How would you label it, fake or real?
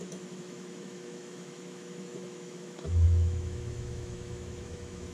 fake